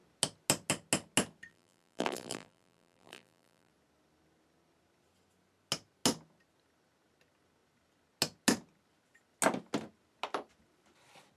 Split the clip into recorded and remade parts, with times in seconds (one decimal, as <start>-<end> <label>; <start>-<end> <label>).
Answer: 0.0-1.5 recorded; 1.5-3.7 remade; 3.7-11.4 recorded